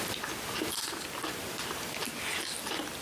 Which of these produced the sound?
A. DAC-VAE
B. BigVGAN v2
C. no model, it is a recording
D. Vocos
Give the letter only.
C